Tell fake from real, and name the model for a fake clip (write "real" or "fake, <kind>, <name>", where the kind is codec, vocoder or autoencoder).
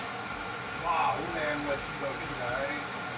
real